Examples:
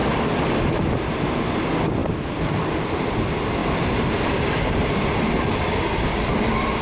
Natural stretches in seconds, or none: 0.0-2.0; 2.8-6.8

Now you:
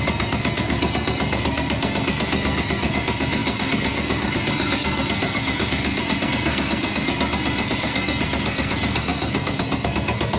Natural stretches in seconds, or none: none

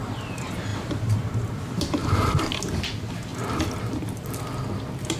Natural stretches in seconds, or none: 0.0-0.7; 1.5-2.0; 2.5-5.2

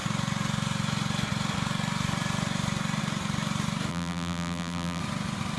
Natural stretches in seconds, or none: 0.0-3.9; 5.0-5.6

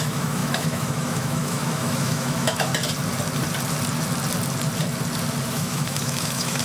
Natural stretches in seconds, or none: 2.7-5.5